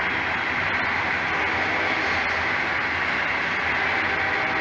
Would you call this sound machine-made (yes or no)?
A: no